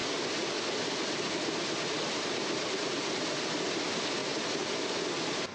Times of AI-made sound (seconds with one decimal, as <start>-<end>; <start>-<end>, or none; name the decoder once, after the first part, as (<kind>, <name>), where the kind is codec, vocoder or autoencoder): none